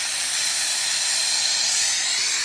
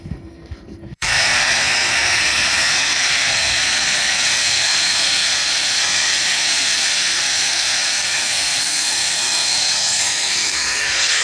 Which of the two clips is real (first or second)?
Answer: first